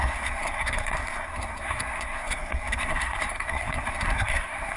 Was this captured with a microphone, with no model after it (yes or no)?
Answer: no